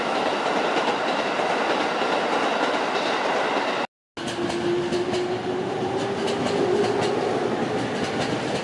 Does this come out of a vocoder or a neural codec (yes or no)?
no